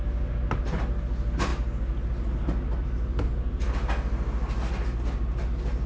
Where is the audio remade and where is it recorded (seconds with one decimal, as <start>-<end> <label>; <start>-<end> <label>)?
0.0-5.9 recorded